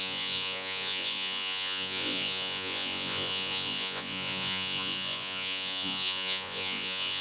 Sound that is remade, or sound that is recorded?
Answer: remade